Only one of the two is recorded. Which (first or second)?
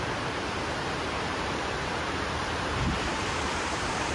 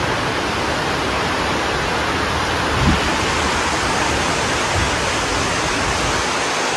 second